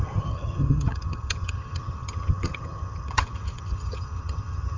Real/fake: fake